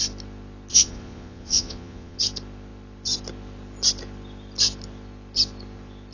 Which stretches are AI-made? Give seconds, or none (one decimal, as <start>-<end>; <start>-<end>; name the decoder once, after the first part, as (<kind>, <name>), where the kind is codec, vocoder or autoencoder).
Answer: 0.7-2.2 (vocoder, Vocos)